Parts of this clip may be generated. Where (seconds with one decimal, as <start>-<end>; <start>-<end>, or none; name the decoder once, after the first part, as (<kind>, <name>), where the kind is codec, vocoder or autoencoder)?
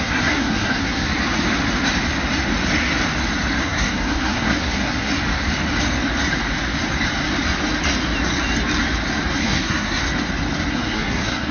0.0-1.1 (codec, SNAC); 3.6-5.1; 9.4-10.0; 10.7-11.5